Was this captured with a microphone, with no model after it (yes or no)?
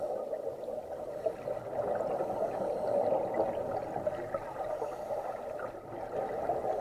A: yes